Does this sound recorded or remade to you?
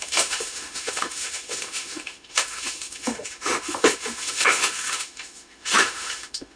remade